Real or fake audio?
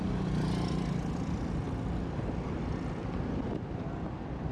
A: real